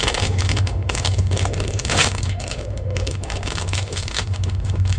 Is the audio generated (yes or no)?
yes